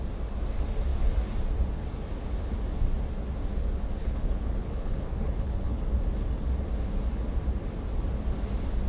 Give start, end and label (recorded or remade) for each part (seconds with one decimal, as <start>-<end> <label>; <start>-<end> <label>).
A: 0.0-4.0 recorded; 4.0-5.8 remade; 5.8-8.9 recorded